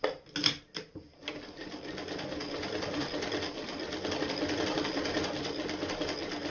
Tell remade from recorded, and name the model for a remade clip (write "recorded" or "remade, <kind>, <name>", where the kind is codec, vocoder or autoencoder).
recorded